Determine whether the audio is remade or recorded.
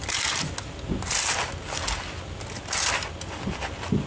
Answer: recorded